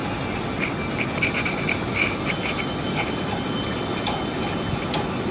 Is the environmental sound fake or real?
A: real